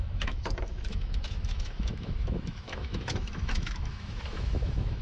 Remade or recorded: remade